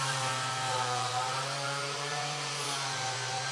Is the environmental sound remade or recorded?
remade